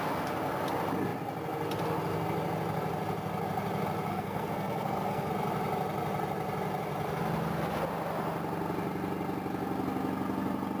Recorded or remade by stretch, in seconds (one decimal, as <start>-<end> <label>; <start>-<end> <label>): 0.0-4.1 recorded; 4.1-5.3 remade; 5.3-10.8 recorded